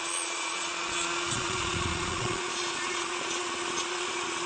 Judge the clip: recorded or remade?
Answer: remade